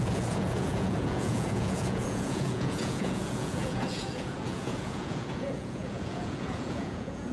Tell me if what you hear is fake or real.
fake